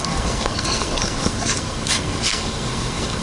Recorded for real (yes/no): no